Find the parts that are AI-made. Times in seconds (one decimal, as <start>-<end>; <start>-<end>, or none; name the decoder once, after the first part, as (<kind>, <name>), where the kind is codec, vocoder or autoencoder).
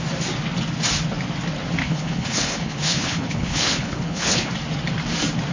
1.8-4.5 (codec, HILCodec)